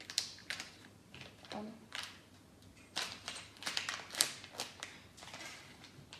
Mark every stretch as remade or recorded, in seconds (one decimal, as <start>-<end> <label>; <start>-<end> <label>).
0.0-0.4 recorded; 0.4-3.9 remade; 3.9-6.2 recorded